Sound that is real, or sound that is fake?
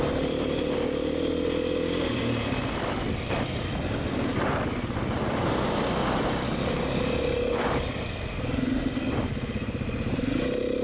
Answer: real